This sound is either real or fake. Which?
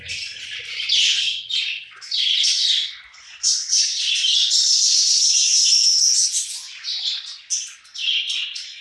real